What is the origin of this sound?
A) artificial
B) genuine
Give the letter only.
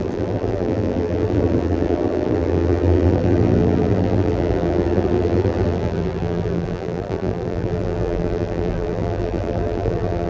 A